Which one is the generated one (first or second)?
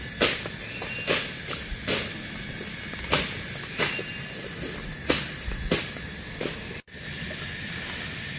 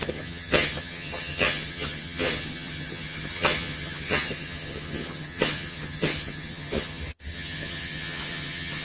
second